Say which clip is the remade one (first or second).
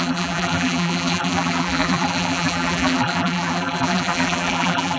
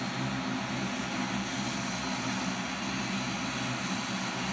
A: first